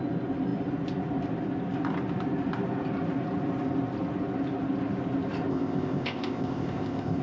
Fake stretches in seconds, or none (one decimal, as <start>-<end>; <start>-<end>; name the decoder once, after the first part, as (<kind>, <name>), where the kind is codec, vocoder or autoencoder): 5.5-7.2 (codec, ZipCodec)